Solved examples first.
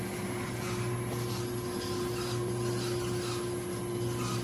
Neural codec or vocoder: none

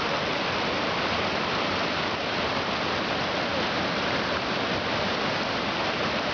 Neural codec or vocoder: none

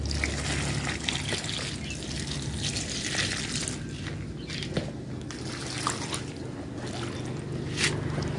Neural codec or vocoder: none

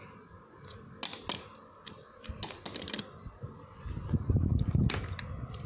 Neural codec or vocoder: none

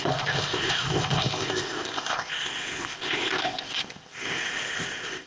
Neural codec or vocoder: codec, ZipCodec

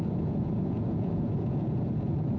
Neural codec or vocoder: vocoder, Vocos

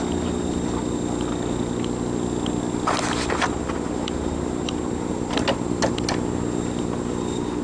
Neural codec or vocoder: none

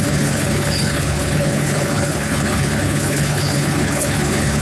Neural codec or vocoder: codec, HILCodec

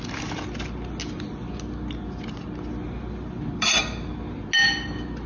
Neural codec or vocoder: none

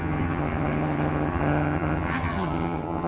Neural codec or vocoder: vocoder, HiFi-GAN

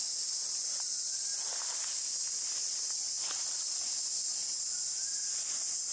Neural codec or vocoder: none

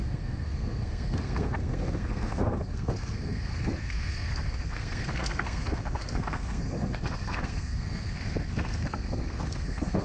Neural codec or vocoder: codec, SNAC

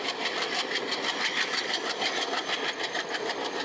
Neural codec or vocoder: none